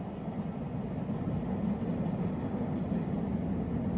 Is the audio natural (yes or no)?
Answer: yes